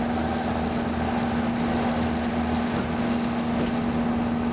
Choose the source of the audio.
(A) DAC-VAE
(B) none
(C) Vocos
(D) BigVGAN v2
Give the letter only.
B